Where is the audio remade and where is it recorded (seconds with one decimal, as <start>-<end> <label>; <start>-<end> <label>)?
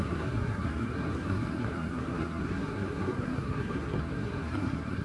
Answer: 0.0-5.0 remade